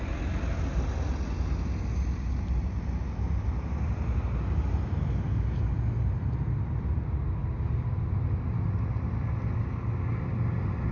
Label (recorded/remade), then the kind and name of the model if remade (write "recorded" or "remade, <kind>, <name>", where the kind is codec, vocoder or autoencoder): recorded